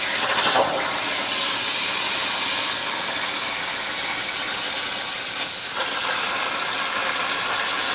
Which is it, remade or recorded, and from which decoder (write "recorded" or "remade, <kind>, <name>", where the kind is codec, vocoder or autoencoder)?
recorded